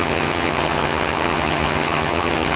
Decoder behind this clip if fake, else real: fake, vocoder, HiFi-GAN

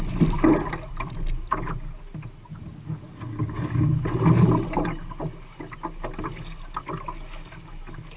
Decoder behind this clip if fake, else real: real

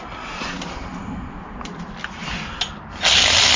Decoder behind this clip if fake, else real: real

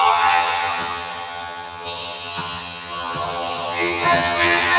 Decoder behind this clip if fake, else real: fake, vocoder, HiFi-GAN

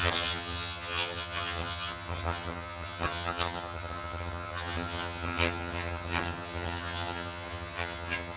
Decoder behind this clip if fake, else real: fake, vocoder, HiFi-GAN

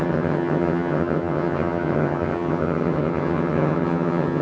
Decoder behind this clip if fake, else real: fake, vocoder, HiFi-GAN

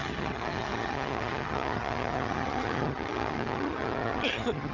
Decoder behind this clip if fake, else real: fake, vocoder, HiFi-GAN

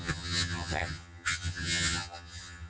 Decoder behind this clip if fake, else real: fake, vocoder, HiFi-GAN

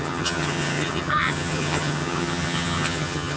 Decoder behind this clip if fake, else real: fake, vocoder, HiFi-GAN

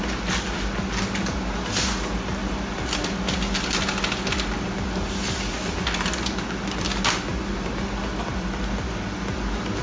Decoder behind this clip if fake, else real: real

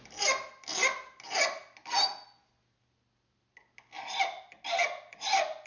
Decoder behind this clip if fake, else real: real